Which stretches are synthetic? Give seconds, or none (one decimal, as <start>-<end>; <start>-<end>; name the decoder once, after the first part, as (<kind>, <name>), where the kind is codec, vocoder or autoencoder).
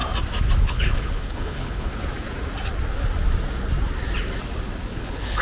0.6-1.9 (codec, HILCodec); 4.9-5.4